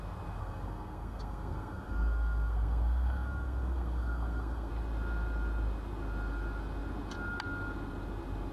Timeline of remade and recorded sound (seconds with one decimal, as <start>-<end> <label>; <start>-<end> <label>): 0.0-0.4 recorded; 0.4-4.7 remade; 4.7-8.5 recorded